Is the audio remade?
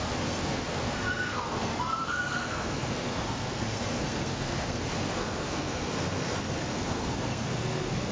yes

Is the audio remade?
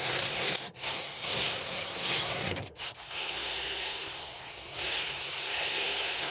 yes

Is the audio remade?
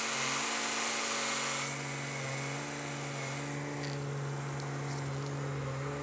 no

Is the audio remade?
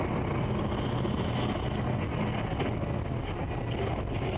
no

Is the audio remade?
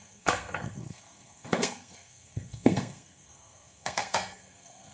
yes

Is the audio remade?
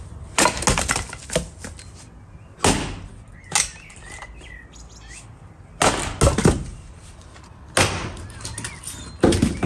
no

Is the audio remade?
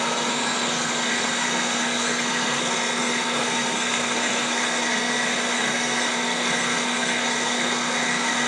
yes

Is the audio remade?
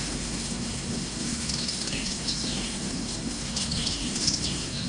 yes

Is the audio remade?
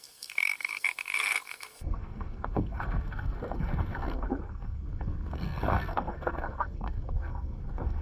yes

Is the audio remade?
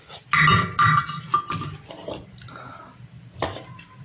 no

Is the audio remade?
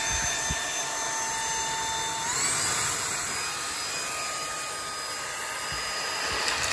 no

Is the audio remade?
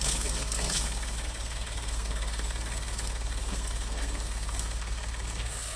yes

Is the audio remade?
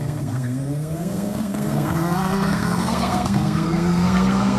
yes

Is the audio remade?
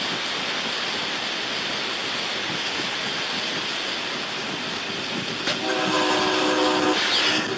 no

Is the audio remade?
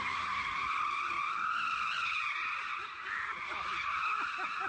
no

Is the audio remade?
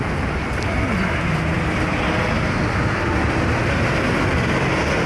no